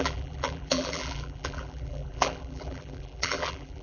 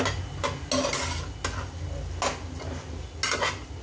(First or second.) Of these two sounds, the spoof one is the first